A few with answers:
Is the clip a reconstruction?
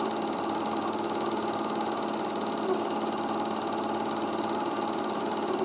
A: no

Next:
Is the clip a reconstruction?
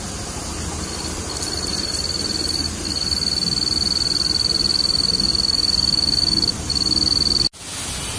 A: no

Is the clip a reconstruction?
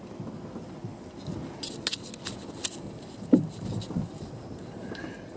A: no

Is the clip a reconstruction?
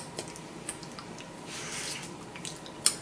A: no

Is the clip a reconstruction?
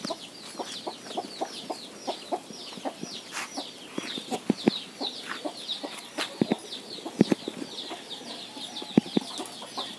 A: no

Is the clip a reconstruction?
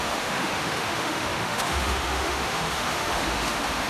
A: yes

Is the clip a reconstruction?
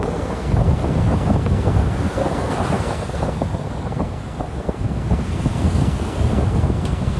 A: yes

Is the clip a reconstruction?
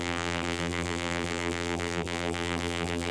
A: yes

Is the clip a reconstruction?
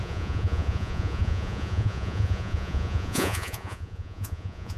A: yes